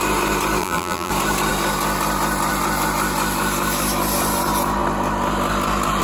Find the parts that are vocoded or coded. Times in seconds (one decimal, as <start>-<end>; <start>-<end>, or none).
0.6-1.1